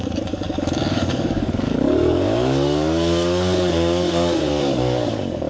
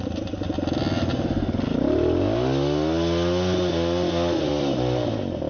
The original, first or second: second